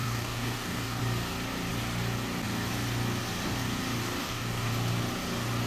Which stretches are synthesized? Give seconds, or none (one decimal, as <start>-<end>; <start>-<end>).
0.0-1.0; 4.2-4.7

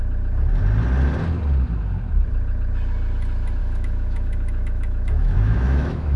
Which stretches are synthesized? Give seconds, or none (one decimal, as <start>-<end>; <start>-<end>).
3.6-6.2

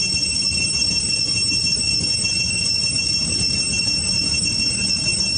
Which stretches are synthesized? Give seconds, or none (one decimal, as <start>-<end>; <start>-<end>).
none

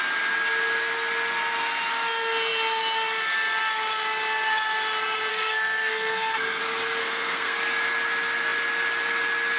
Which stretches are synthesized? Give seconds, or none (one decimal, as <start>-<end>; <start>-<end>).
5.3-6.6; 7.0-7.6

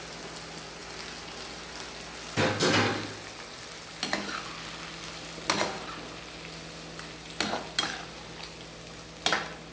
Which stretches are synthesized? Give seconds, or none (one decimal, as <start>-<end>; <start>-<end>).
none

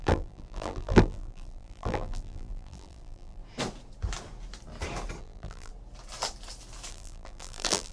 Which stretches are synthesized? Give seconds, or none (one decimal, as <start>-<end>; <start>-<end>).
0.0-3.4; 5.2-5.7; 6.9-7.9

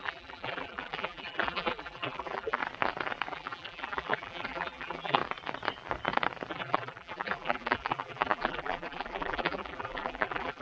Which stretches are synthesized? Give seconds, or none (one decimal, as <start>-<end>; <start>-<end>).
0.0-2.6; 3.3-5.2; 6.5-10.6

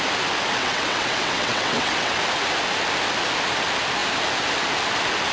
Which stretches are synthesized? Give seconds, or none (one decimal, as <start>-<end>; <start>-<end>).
0.6-2.1